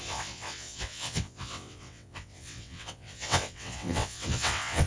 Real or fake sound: fake